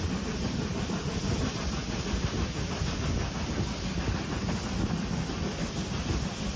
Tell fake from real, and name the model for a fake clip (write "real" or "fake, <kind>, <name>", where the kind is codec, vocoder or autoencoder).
real